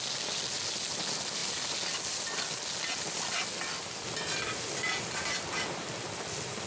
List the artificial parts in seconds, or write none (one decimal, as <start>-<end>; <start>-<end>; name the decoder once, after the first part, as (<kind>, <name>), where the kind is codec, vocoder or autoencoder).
none